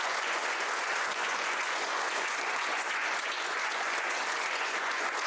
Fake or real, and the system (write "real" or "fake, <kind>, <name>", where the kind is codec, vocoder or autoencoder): fake, vocoder, Vocos